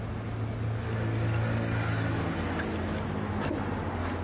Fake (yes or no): no